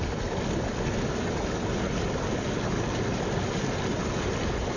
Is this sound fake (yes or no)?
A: no